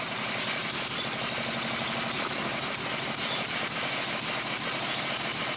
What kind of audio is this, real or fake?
real